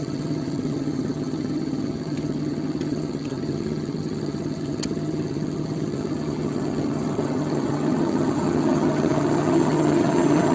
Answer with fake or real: fake